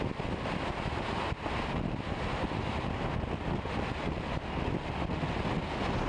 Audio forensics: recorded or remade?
recorded